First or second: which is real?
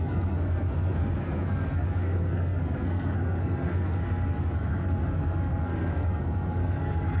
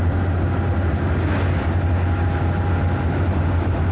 second